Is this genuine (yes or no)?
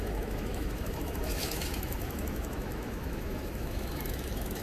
no